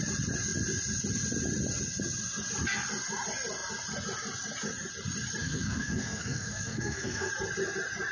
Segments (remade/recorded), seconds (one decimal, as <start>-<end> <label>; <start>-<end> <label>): 0.0-5.4 recorded; 5.4-7.3 remade; 7.3-8.1 recorded